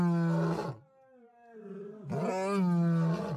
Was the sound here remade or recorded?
recorded